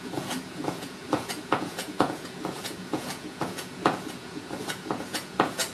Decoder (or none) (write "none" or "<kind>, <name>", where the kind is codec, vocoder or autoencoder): vocoder, Vocos